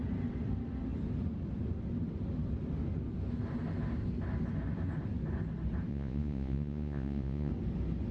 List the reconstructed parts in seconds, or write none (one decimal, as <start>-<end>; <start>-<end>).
5.9-7.5